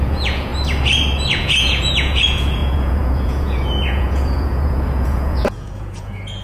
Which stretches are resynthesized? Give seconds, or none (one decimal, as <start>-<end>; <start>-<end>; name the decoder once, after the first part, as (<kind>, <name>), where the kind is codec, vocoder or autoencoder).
0.0-0.5 (vocoder, Vocos); 1.3-6.4